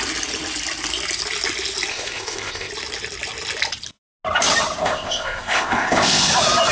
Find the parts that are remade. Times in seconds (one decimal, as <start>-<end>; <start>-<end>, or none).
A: 1.9-2.7; 4.8-6.3